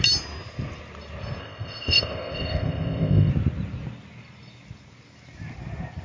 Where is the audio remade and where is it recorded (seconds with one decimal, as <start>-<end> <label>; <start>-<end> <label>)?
0.0-1.4 recorded; 1.4-3.3 remade; 3.3-6.0 recorded